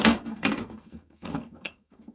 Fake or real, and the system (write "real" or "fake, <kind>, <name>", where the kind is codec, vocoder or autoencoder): fake, codec, SNAC